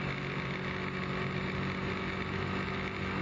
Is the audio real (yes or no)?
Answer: yes